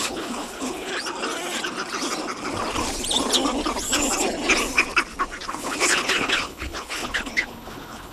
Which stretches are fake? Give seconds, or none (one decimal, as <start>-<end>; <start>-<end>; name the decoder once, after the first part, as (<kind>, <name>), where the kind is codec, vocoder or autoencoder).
0.0-0.9 (codec, HILCodec); 5.5-8.1